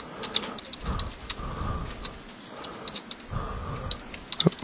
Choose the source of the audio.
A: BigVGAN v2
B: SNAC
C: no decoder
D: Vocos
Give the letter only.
C